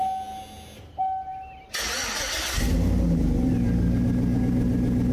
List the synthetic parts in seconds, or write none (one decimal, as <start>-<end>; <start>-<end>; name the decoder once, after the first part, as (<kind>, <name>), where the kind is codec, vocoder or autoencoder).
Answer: none